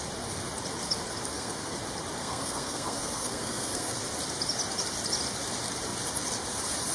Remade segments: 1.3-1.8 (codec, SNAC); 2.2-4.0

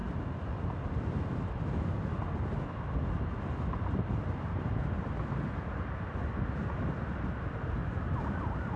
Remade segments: none